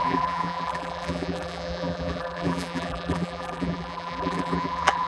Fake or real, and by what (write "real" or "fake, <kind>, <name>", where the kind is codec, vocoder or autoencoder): fake, vocoder, BigVGAN v2